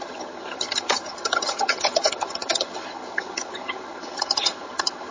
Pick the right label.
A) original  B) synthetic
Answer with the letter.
B